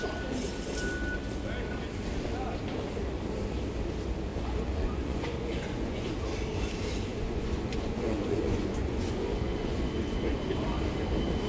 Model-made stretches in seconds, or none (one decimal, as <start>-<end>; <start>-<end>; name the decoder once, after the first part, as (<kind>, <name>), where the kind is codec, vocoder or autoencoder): 4.3-6.1 (vocoder, Vocos); 7.1-10.5